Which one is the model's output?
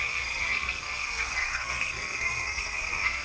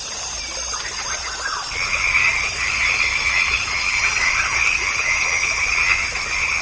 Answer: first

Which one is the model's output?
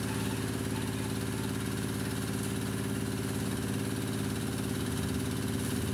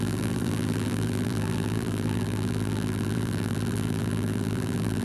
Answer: second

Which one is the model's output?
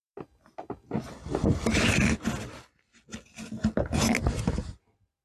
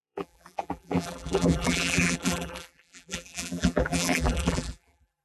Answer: second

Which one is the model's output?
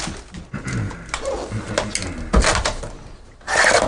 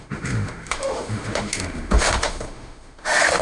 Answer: second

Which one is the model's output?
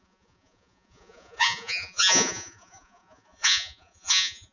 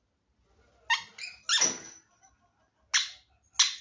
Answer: first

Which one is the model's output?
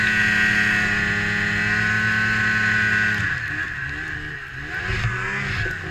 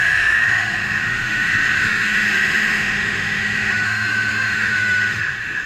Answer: second